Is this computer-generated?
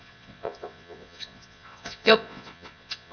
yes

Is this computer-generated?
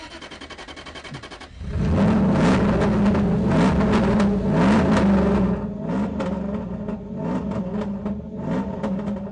no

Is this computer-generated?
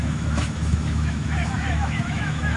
yes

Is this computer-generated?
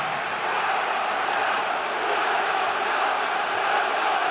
no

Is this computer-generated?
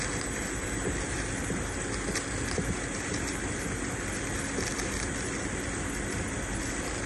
no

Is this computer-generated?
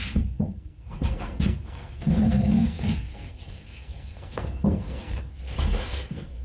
yes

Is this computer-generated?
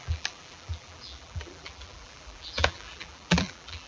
yes